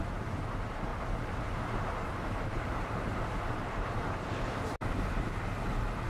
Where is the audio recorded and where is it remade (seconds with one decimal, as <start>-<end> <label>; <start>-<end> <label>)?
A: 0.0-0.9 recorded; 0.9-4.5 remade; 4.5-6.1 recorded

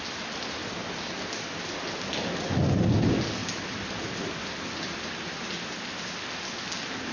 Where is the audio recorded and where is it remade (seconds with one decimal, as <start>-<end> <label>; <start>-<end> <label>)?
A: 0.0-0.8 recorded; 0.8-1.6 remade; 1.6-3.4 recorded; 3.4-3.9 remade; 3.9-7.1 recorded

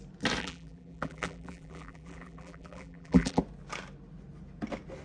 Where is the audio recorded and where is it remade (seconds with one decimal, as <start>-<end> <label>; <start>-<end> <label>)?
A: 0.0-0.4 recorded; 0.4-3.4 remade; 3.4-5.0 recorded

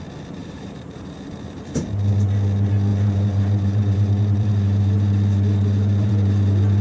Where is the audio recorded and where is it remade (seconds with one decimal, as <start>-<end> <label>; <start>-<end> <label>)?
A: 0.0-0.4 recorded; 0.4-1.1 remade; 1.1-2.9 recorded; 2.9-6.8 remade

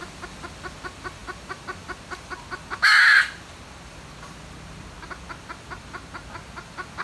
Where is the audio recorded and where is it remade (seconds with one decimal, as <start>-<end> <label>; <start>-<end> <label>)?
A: 0.0-7.0 recorded

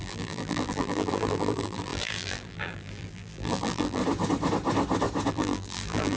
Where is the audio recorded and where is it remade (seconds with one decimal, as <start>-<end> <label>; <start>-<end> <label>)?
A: 0.0-4.0 remade; 4.0-5.3 recorded; 5.3-6.2 remade

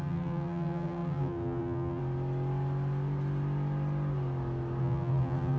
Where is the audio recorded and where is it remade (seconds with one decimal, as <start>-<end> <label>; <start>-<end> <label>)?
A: 0.0-2.0 remade; 2.0-4.8 recorded; 4.8-5.6 remade